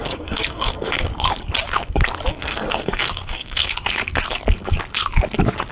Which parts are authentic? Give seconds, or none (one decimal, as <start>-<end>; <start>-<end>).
1.1-2.3; 3.7-5.7